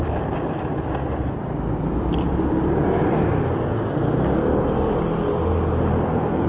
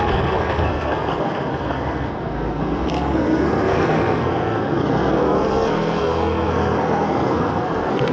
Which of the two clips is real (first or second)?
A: first